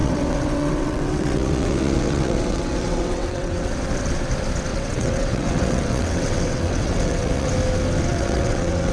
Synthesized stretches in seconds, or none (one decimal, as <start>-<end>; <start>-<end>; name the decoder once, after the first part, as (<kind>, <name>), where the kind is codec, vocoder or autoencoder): 0.0-3.7 (vocoder, WaveNeXt); 4.7-7.5; 8.1-8.9